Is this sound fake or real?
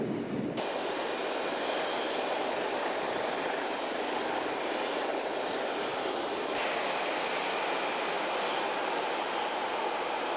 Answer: real